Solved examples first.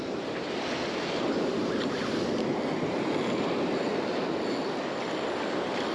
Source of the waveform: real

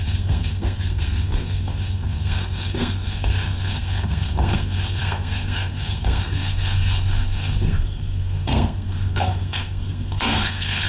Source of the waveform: fake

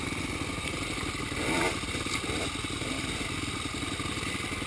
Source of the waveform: real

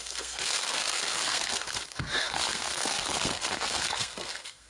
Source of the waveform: fake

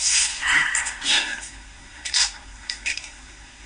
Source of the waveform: fake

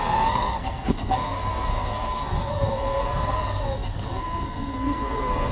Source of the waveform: fake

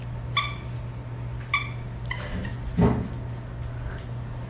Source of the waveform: real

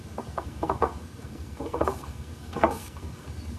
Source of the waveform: fake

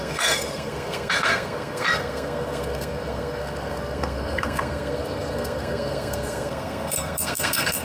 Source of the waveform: fake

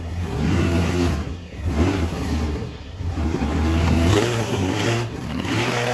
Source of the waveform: fake